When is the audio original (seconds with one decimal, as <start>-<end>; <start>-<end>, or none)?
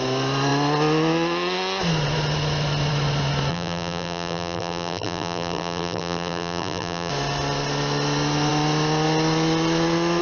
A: 0.0-3.5; 7.1-10.2